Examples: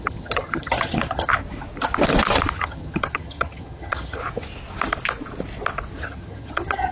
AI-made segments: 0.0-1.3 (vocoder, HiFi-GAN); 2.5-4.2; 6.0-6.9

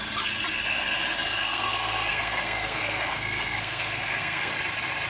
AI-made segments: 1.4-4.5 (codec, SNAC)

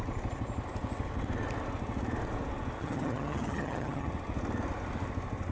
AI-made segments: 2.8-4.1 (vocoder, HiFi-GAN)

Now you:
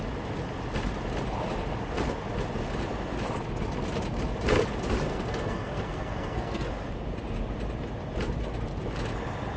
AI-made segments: 5.1-6.7 (codec, SNAC)